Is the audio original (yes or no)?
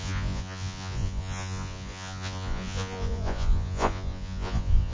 no